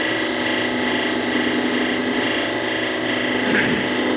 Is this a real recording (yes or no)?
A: yes